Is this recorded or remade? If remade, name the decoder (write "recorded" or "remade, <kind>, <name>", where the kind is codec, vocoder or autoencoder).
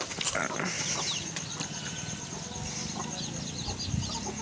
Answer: recorded